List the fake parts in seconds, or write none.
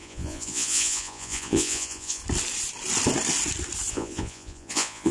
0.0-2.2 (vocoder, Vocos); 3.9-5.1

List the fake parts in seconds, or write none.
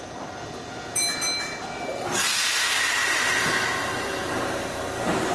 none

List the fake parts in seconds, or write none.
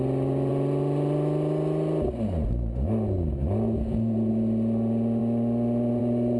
none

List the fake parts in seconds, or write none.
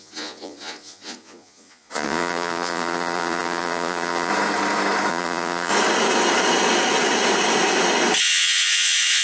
0.0-4.3 (vocoder, Vocos); 5.1-5.7; 8.2-9.2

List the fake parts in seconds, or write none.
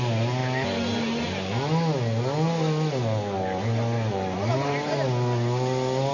none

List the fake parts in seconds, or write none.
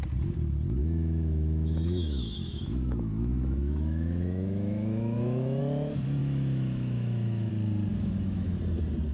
0.8-5.6 (autoencoder, DAC-VAE); 6.2-7.5; 7.9-8.6